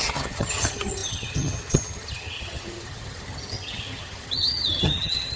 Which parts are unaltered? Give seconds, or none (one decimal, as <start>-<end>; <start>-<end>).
none

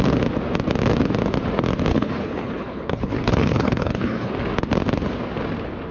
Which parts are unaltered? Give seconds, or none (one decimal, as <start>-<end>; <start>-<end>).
0.0-1.9; 4.3-5.9

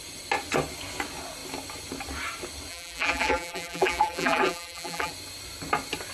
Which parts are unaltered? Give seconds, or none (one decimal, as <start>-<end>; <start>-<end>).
0.0-2.7; 5.1-6.1

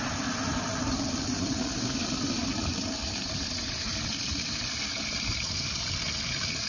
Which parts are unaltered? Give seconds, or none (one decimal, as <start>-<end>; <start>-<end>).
0.0-6.7

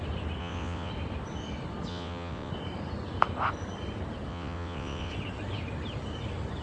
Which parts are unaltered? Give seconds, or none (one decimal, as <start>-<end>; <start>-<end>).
0.0-0.4; 0.9-1.9; 2.5-4.3; 5.1-6.6

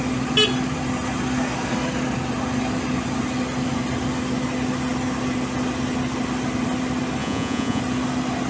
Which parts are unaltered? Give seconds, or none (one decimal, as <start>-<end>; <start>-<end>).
0.0-7.2; 7.8-8.5

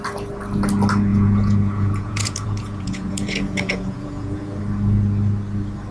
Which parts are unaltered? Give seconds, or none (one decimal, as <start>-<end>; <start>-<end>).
0.0-1.1; 4.6-5.9

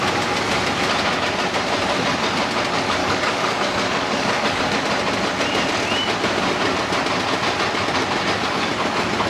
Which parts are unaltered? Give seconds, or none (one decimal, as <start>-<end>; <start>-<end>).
0.0-3.0; 4.6-9.3